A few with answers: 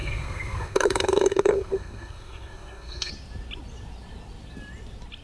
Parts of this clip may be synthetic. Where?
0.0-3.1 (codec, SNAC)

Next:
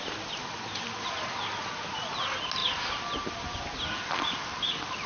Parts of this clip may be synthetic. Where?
none

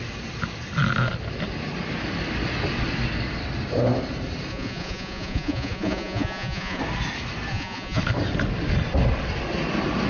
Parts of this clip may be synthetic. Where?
4.5-6.8 (vocoder, Vocos); 7.5-8.0

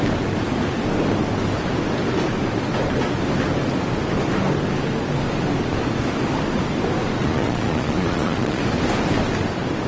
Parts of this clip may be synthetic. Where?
7.2-8.6 (vocoder, Vocos)

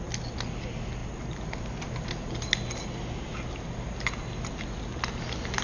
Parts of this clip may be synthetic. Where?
none

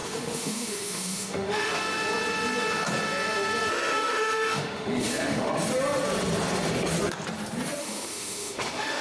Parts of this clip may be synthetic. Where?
0.0-1.7 (autoencoder, DAC-VAE); 3.7-5.5; 7.8-9.0